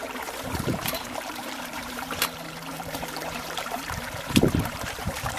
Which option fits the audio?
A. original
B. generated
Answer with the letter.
B